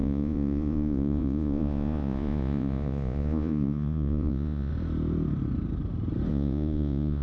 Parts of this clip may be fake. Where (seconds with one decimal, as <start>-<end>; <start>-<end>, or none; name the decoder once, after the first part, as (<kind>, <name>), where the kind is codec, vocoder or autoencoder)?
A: 0.0-4.7 (vocoder, Vocos); 6.3-7.2